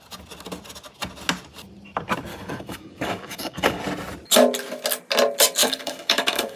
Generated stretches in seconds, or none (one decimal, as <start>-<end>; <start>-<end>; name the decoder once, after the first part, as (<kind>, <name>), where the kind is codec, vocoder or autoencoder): 2.3-3.8 (codec, DAC); 5.6-6.6